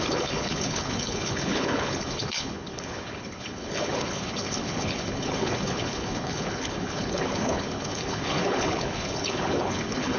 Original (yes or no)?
no